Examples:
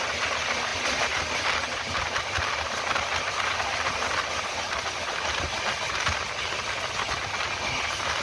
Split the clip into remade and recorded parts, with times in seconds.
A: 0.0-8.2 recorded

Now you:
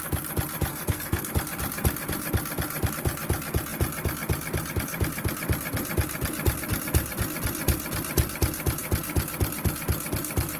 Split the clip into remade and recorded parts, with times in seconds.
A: 0.0-0.7 recorded; 0.7-1.3 remade; 1.3-10.6 recorded

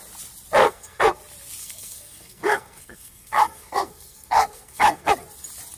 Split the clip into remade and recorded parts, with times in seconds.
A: 0.0-0.6 recorded; 0.6-1.2 remade; 1.2-1.6 recorded; 1.6-5.1 remade; 5.1-5.8 recorded

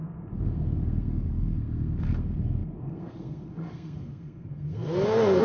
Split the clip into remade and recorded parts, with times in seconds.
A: 0.0-5.4 remade